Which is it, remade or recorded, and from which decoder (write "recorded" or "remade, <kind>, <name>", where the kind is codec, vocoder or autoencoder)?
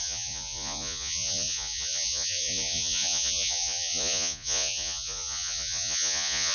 remade, vocoder, Vocos